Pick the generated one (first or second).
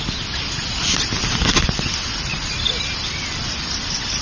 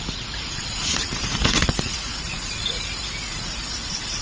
second